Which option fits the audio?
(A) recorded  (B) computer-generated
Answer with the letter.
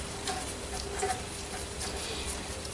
A